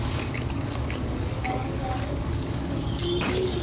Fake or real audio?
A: fake